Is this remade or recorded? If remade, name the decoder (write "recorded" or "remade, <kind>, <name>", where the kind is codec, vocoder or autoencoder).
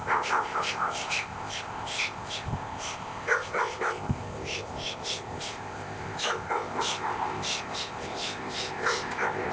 remade, codec, ZipCodec